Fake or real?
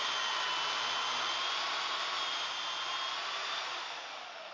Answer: real